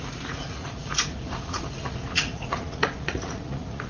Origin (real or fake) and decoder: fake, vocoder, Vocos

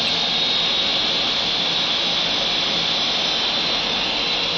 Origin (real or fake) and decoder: real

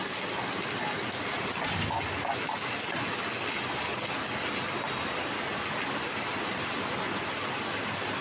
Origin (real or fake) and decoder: real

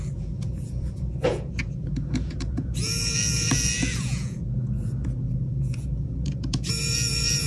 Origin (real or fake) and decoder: fake, vocoder, Vocos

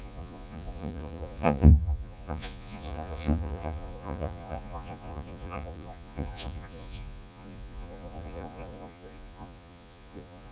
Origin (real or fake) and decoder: fake, vocoder, Vocos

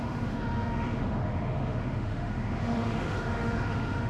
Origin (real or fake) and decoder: fake, autoencoder, DAC-VAE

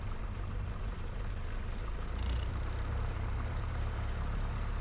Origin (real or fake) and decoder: fake, vocoder, BigVGAN v2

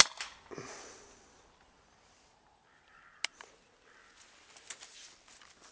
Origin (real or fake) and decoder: real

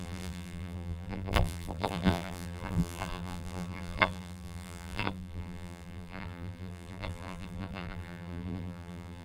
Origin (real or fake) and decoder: fake, vocoder, BigVGAN v2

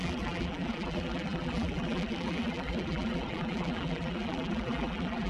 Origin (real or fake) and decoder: fake, vocoder, BigVGAN v2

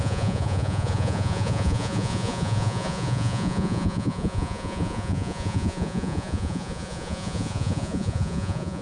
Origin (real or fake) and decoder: fake, vocoder, Vocos